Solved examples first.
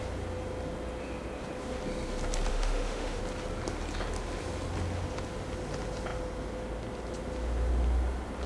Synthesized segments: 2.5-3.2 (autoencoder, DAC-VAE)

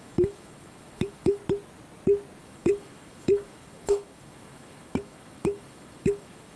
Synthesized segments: 0.0-1.4 (autoencoder, DAC-VAE); 2.4-6.6